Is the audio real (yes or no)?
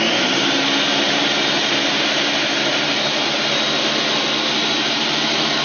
yes